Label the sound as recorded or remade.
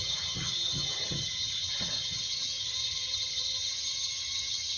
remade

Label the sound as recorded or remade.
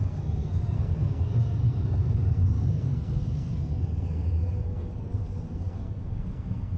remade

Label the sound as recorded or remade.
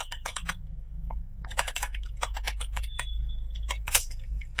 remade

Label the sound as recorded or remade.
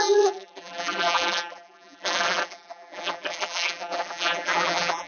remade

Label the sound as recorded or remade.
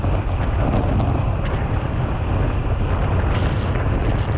recorded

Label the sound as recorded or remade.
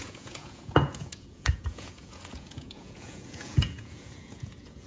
remade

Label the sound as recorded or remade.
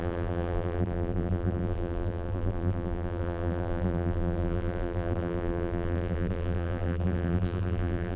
remade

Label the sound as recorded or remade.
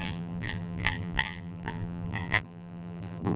remade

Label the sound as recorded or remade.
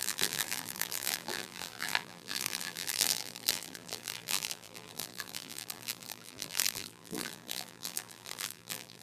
remade